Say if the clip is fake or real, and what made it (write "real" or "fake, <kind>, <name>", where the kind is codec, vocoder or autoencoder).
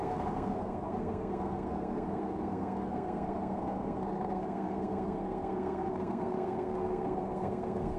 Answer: fake, codec, SNAC